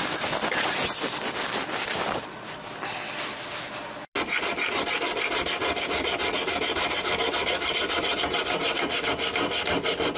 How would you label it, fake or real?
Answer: real